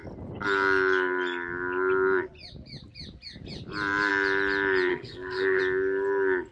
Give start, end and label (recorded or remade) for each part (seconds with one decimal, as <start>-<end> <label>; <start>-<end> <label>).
0.0-4.9 recorded; 4.9-5.6 remade; 5.6-6.5 recorded